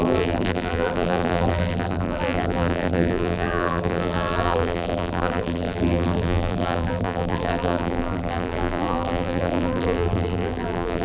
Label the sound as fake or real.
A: fake